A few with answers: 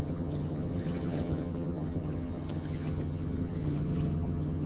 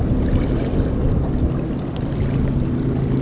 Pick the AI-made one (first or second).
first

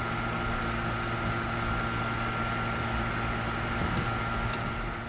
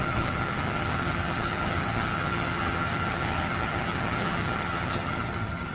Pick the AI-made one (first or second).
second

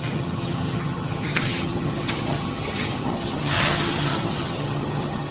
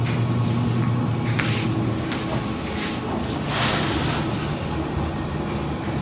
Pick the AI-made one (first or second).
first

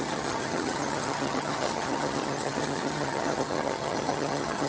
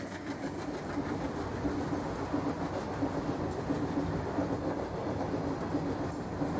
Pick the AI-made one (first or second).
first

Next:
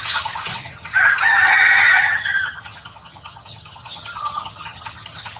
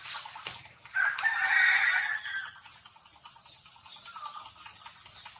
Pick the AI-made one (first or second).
first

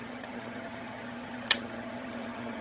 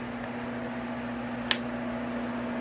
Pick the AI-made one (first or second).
first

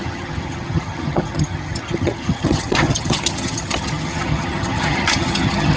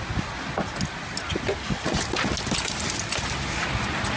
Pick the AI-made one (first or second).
first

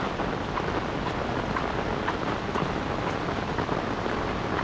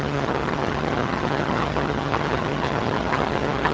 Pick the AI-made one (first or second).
second